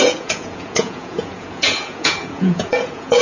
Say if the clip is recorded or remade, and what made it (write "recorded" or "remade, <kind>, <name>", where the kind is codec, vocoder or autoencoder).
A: remade, vocoder, Vocos